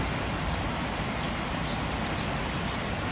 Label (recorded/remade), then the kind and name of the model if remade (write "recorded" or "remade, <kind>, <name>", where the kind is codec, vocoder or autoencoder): recorded